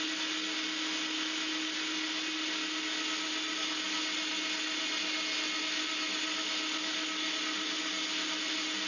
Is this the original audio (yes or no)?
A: yes